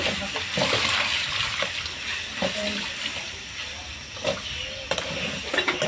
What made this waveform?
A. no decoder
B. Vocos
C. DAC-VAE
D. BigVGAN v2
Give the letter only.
D